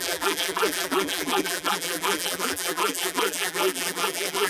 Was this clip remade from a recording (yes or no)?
yes